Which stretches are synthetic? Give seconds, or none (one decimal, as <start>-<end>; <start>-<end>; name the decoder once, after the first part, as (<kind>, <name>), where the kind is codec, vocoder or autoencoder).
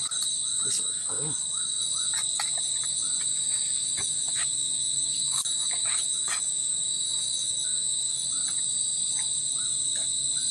0.5-1.9 (autoencoder, DAC-VAE); 3.3-8.3